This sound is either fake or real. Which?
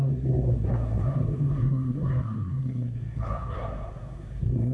fake